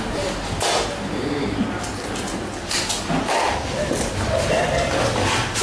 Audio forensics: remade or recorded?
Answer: recorded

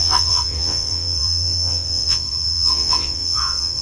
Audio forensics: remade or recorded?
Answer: remade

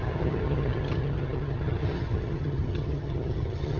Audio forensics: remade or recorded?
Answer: remade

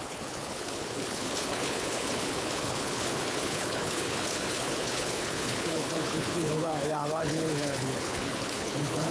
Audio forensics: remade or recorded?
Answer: remade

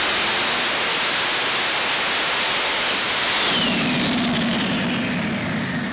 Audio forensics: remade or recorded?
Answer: recorded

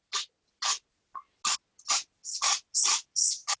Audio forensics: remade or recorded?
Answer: recorded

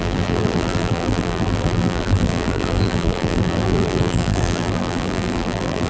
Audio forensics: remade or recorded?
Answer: remade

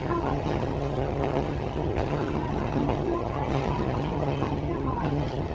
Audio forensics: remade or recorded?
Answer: remade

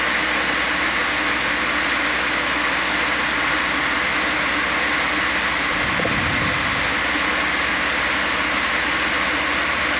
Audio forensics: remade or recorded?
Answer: recorded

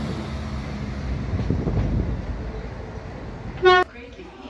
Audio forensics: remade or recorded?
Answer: recorded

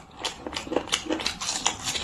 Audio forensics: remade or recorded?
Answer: recorded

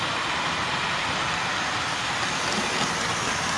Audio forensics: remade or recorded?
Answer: recorded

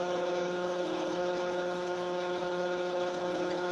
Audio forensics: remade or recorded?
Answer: remade